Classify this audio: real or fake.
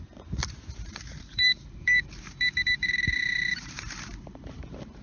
fake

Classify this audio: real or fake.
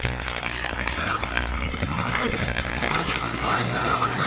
fake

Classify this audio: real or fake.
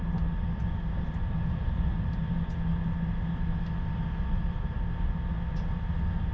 real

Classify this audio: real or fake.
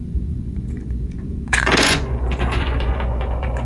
fake